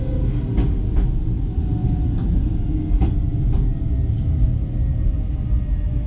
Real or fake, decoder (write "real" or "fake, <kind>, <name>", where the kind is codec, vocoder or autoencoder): real